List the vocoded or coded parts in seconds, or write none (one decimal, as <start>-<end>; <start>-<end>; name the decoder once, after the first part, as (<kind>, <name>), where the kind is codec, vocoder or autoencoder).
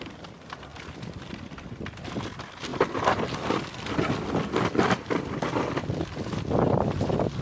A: none